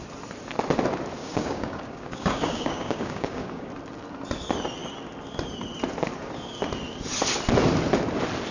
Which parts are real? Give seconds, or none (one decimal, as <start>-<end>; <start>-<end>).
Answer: 0.0-1.2; 3.7-8.5